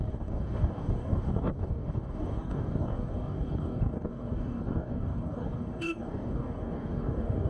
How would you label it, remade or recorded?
remade